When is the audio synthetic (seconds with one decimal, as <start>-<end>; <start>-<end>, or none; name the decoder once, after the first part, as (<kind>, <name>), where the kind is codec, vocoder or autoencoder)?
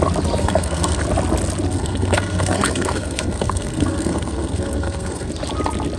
0.4-1.0 (codec, SNAC); 1.7-5.3